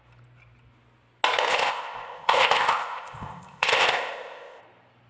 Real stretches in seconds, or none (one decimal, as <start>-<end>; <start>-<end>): 0.0-1.5; 4.6-5.1

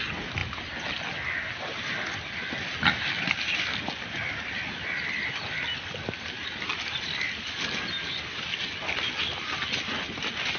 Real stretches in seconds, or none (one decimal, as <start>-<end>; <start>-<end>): 0.0-10.6